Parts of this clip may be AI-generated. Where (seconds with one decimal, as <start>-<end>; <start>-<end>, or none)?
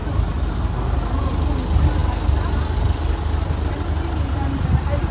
none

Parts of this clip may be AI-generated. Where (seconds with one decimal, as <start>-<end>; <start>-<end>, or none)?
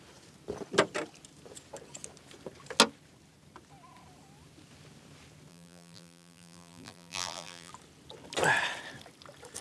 5.5-7.7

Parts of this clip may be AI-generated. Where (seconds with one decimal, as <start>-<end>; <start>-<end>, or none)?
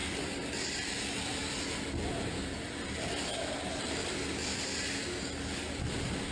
0.0-6.3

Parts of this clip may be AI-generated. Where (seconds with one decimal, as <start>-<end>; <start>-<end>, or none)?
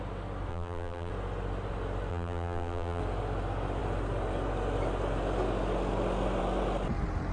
0.5-1.1; 2.1-3.0